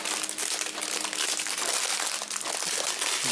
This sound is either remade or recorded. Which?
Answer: recorded